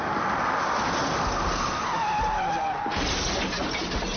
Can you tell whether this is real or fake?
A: real